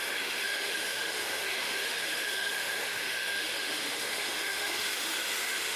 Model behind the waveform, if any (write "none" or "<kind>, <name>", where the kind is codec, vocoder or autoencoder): autoencoder, DAC-VAE